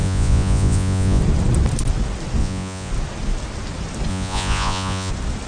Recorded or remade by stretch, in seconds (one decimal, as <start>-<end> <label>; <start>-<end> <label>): 0.0-1.2 remade; 1.2-2.4 recorded; 2.4-2.9 remade; 2.9-4.1 recorded; 4.1-5.1 remade; 5.1-5.5 recorded